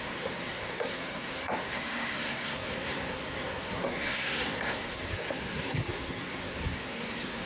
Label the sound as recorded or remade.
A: remade